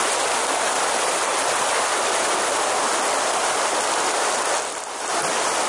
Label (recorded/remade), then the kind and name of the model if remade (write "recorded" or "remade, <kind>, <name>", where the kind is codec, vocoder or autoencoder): recorded